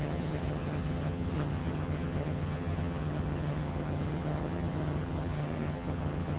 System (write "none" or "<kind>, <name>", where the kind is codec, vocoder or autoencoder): vocoder, HiFi-GAN